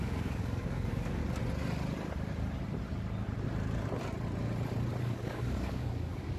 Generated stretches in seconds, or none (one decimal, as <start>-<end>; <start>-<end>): 0.0-1.2; 5.0-6.4